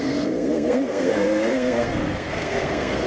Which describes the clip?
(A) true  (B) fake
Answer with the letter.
B